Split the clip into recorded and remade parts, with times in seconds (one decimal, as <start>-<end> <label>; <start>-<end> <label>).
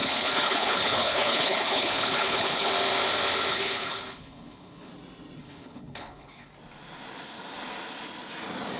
0.0-2.7 remade; 2.7-3.5 recorded; 3.5-4.9 remade; 4.9-5.4 recorded; 5.4-6.5 remade; 6.5-8.8 recorded